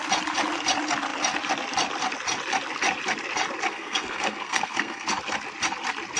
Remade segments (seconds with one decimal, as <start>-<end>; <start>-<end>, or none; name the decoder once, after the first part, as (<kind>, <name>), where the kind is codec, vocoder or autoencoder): 3.7-5.1 (codec, SNAC)